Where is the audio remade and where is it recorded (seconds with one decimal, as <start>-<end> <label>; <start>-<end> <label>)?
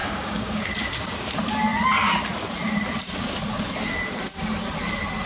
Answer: 0.0-0.7 remade; 0.7-5.3 recorded